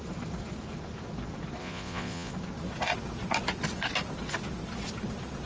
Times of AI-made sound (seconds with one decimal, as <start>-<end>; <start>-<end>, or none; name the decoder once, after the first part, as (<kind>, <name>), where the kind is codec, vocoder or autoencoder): 1.6-2.3 (vocoder, Vocos)